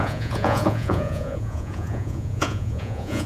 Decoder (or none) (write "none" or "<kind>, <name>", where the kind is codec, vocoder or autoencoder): vocoder, Vocos